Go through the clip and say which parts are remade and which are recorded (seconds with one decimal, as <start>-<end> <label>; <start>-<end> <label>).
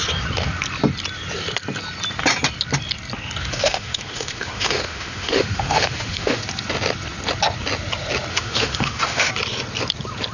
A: 0.0-3.4 recorded; 3.4-6.4 remade; 6.4-8.3 recorded; 8.3-9.3 remade; 9.3-10.3 recorded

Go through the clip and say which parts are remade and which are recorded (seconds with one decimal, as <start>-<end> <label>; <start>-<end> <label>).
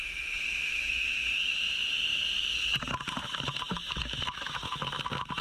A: 0.0-0.7 recorded; 0.7-1.2 remade; 1.2-3.7 recorded; 3.7-4.8 remade; 4.8-5.4 recorded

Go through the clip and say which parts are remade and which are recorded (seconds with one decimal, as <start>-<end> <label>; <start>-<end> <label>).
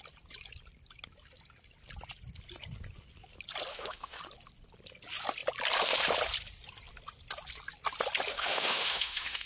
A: 0.0-3.7 recorded; 3.7-4.2 remade; 4.2-8.3 recorded; 8.3-9.5 remade